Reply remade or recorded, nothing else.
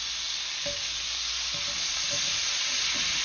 recorded